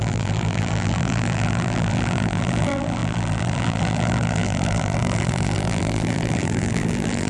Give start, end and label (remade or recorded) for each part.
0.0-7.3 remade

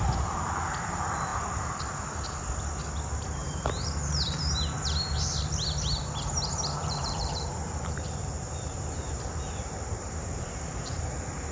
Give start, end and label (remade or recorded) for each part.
0.0-3.4 recorded; 3.4-3.9 remade; 3.9-6.8 recorded; 6.8-11.0 remade; 11.0-11.5 recorded

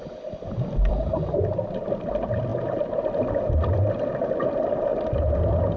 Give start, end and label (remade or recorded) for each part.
0.0-2.5 remade; 2.5-4.5 recorded; 4.5-4.9 remade; 4.9-5.8 recorded

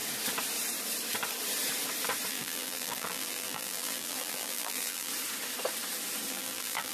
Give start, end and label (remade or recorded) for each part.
0.0-2.3 recorded; 2.3-5.1 remade; 5.1-6.3 recorded; 6.3-6.9 remade

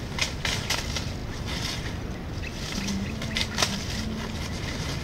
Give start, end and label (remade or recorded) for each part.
0.0-5.0 recorded

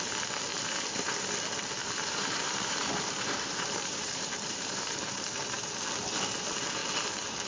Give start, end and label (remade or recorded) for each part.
0.0-0.5 recorded; 0.5-1.3 remade; 1.3-1.8 recorded; 1.8-5.7 remade; 5.7-7.5 recorded